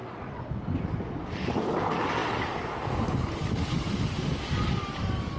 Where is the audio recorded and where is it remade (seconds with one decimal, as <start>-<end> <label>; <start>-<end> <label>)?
0.0-1.2 recorded; 1.2-5.4 remade